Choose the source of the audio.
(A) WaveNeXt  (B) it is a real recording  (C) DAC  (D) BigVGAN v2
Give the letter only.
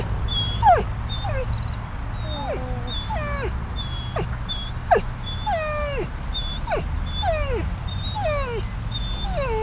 B